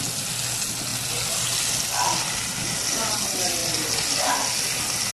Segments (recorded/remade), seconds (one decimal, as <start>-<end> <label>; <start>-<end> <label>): 0.0-5.1 recorded

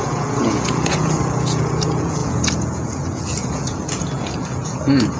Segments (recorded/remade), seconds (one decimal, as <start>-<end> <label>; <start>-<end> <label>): 0.0-5.2 remade

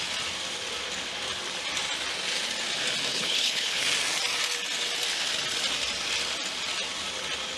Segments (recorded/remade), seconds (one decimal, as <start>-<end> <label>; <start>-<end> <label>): 0.0-3.1 recorded; 3.1-3.8 remade; 3.8-7.6 recorded

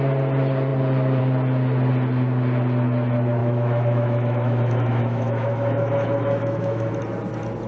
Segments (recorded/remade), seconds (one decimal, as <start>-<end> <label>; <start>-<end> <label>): 0.0-3.4 recorded; 3.4-6.9 remade; 6.9-7.7 recorded